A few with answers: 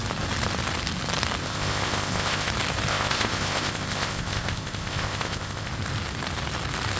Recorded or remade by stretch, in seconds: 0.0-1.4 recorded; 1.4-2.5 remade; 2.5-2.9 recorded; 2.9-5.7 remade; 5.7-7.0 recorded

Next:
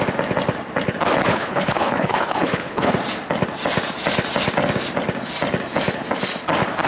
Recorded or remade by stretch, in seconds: 0.0-1.3 recorded; 1.3-2.9 remade; 2.9-6.9 recorded

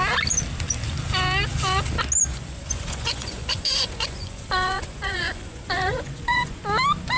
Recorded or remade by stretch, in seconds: 0.0-2.3 recorded; 2.3-6.6 remade; 6.6-7.2 recorded

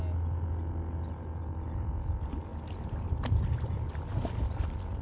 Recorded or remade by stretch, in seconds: 0.0-5.0 recorded

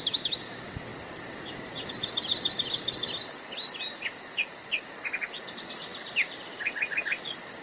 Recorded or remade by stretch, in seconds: 0.0-7.6 recorded

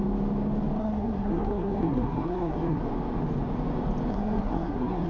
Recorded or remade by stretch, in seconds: 0.0-0.8 recorded; 0.8-2.8 remade; 2.8-4.1 recorded; 4.1-5.1 remade

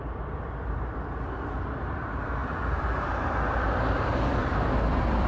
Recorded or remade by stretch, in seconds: 0.0-5.3 remade